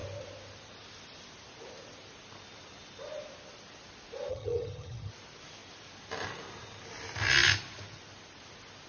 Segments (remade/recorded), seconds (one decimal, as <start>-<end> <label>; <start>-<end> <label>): 0.0-4.3 recorded; 4.3-5.1 remade; 5.1-8.9 recorded

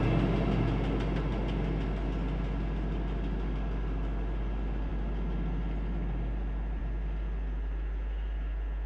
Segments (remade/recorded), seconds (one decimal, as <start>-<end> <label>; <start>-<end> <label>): 0.0-8.9 recorded

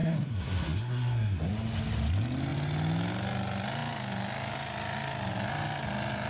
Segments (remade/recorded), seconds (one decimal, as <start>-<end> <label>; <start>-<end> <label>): 0.0-1.5 remade; 1.5-6.3 recorded

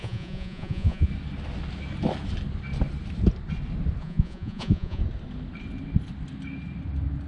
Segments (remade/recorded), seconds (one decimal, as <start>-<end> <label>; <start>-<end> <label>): 0.0-1.1 remade; 1.1-4.0 recorded; 4.0-5.0 remade; 5.0-7.3 recorded